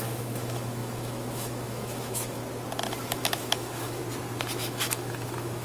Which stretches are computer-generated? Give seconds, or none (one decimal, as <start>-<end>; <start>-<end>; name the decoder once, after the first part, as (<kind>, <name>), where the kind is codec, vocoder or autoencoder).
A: 0.0-2.4 (autoencoder, DAC-VAE); 3.1-4.0; 4.6-5.6

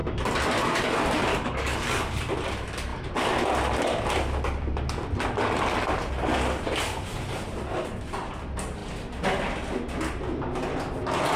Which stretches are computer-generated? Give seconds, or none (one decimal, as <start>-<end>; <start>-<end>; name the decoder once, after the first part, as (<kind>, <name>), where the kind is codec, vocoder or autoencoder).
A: 1.3-2.2 (codec, DAC)